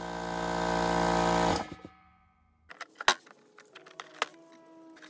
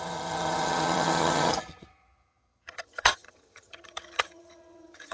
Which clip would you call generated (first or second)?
second